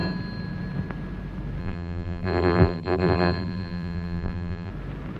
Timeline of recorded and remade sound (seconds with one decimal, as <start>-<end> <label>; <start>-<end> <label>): 0.0-1.6 recorded; 1.6-4.7 remade; 4.7-5.2 recorded